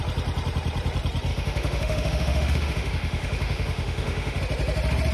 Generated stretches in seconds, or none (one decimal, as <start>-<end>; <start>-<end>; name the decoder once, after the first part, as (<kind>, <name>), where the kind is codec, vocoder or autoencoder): 1.3-4.4 (autoencoder, DAC-VAE)